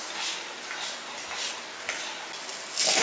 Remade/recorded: recorded